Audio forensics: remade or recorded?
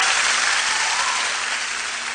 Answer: recorded